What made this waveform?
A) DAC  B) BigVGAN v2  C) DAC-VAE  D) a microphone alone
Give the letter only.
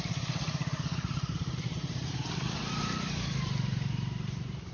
B